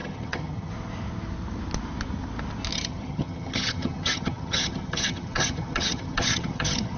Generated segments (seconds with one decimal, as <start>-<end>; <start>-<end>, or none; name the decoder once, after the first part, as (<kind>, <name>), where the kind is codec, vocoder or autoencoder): 0.0-0.7 (vocoder, HiFi-GAN); 2.7-7.0